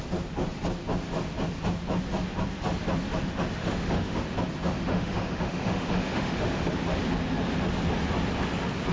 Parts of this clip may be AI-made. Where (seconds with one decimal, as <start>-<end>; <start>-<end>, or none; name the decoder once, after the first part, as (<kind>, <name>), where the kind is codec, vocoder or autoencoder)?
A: 3.6-4.2 (autoencoder, DAC-VAE); 4.9-6.7

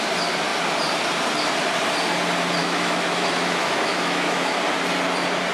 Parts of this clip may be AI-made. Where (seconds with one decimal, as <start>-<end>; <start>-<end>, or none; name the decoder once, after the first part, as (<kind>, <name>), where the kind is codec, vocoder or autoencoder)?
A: 2.6-4.6 (autoencoder, DAC-VAE)